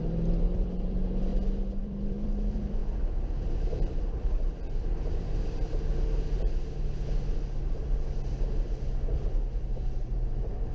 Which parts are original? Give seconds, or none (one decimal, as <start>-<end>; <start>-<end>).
1.3-1.8; 2.8-3.7; 5.7-8.5